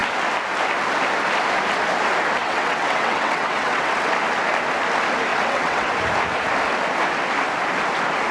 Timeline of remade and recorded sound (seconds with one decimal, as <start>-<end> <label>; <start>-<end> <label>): 0.0-2.4 recorded; 2.4-4.1 remade; 4.1-5.3 recorded; 5.3-5.9 remade; 5.9-8.3 recorded